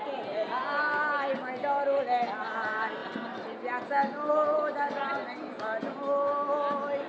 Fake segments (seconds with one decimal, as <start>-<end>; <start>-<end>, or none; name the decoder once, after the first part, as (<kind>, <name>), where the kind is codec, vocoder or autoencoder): none